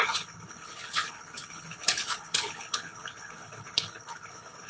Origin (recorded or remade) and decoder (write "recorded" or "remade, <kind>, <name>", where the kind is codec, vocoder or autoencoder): remade, codec, HILCodec